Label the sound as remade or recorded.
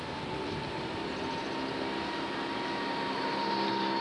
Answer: recorded